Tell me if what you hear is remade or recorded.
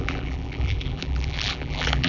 remade